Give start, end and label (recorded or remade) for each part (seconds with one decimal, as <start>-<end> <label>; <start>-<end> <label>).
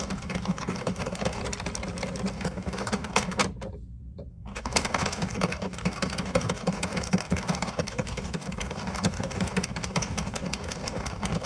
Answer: 0.0-1.4 remade; 1.4-2.3 recorded; 2.3-3.4 remade; 3.4-4.3 recorded; 4.3-11.5 remade